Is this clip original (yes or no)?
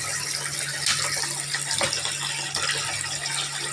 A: yes